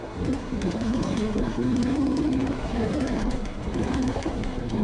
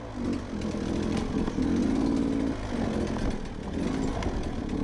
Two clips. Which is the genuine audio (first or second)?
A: second